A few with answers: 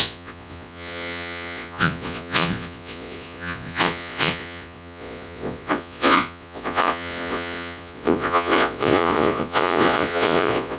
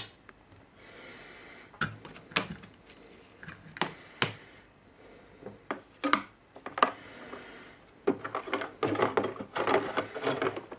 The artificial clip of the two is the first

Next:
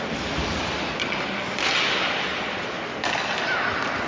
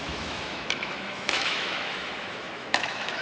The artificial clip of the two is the second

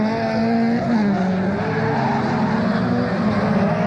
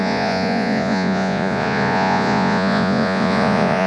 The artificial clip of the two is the second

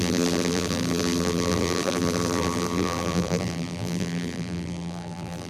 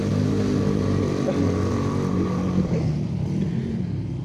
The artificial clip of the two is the first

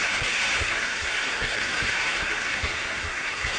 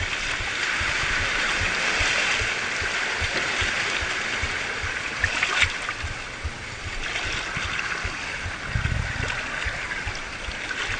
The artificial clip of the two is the first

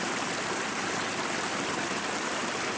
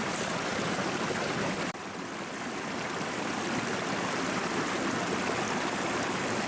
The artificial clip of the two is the second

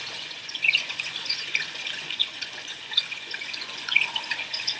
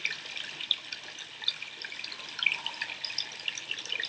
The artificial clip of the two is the first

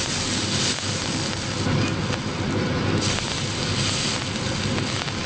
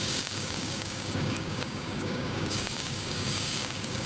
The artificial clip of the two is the second